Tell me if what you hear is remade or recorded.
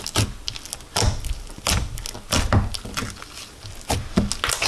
recorded